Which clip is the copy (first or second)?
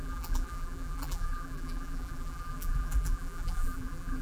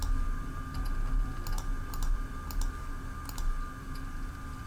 first